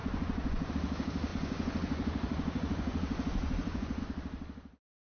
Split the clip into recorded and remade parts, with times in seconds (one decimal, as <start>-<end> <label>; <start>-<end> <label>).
0.0-0.7 remade; 0.7-1.3 recorded; 1.3-4.0 remade; 4.0-5.2 recorded